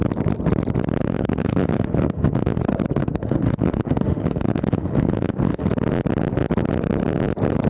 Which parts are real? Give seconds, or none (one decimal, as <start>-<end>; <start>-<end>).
0.0-1.1; 2.6-3.0; 5.7-7.7